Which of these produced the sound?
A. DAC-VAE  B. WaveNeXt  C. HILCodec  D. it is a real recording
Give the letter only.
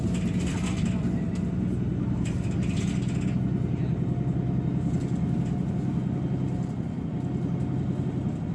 D